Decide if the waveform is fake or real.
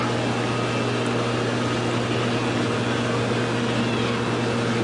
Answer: real